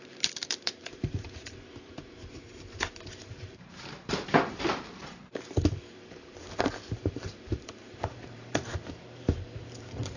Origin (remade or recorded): remade